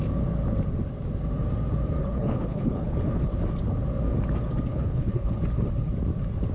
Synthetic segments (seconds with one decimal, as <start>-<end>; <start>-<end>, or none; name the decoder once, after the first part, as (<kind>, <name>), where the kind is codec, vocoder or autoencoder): 2.0-3.4 (codec, HILCodec); 4.7-5.4